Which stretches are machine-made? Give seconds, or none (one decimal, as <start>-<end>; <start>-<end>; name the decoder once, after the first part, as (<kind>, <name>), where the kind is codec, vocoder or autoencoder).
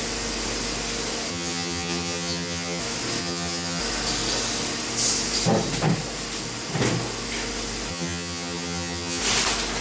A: 1.3-2.8 (vocoder, HiFi-GAN); 3.2-3.8; 7.9-9.2